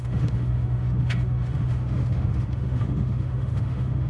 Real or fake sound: fake